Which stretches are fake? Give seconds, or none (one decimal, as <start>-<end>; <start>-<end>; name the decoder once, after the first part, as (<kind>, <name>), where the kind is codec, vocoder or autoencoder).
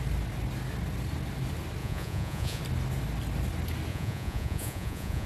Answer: 1.8-2.6 (vocoder, Vocos); 3.9-5.3